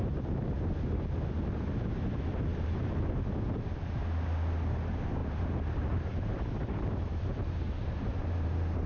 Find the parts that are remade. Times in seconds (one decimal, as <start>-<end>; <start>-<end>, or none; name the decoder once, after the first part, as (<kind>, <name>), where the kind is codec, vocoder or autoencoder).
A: 2.5-3.1 (vocoder, BigVGAN v2); 5.2-8.9